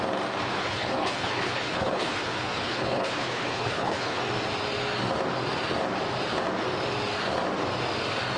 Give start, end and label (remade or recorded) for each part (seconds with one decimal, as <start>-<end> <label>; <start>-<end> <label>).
0.0-0.5 recorded; 0.5-4.2 remade; 4.2-8.4 recorded